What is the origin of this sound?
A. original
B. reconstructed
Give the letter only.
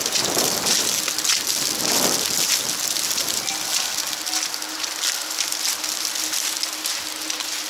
A